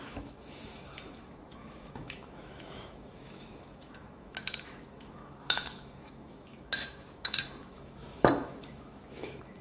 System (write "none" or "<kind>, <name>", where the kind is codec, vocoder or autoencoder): autoencoder, DAC-VAE